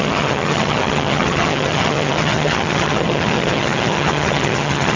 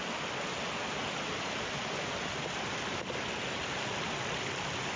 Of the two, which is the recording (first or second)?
second